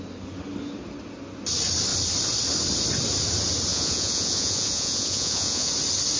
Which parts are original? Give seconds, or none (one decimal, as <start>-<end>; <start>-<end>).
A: 0.0-3.7; 5.7-6.2